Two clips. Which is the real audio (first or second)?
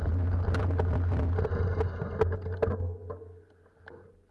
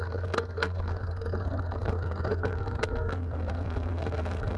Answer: first